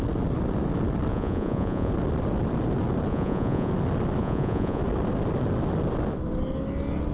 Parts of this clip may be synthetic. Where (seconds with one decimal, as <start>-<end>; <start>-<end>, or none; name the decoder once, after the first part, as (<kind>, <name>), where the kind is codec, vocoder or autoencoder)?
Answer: 1.1-1.9 (vocoder, Vocos); 3.1-3.7; 4.2-4.8